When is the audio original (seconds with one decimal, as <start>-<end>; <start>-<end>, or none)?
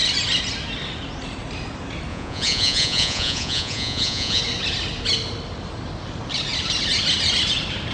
0.0-2.1; 4.4-7.9